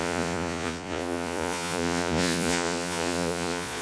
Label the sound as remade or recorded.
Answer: remade